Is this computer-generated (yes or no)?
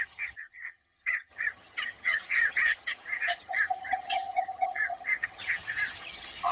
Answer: yes